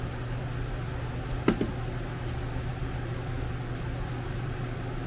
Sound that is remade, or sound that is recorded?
recorded